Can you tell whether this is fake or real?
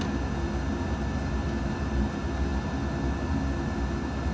real